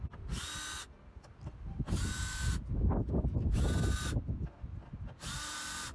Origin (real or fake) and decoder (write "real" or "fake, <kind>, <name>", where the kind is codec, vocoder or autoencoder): real